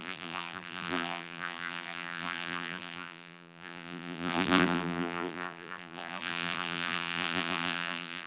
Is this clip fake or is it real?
fake